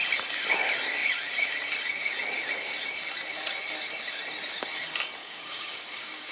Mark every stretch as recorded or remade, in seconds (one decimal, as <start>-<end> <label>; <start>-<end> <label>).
0.0-5.2 recorded; 5.2-6.3 remade